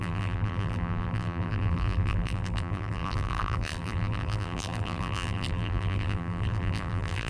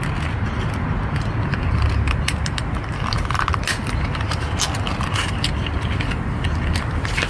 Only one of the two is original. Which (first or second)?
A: second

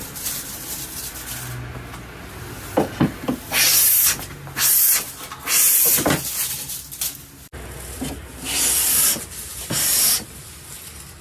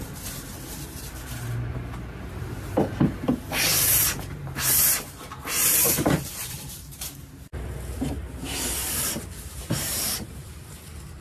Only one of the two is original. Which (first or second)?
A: first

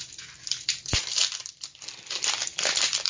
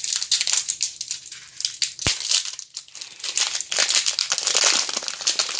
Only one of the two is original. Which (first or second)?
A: second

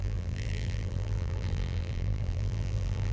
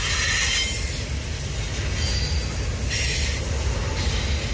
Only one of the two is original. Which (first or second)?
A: second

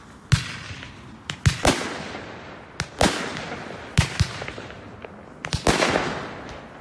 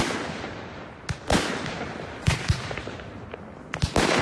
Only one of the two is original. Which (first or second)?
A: first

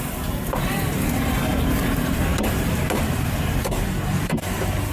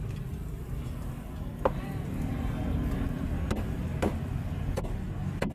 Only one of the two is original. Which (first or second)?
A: second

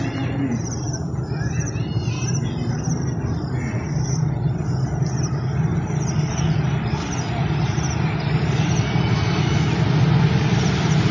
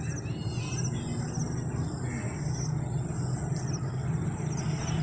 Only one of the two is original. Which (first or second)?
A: second